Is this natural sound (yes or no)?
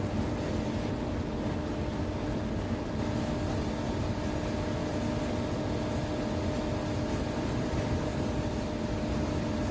yes